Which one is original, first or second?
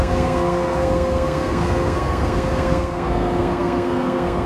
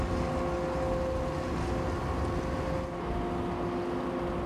second